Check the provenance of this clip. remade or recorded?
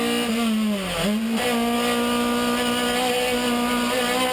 recorded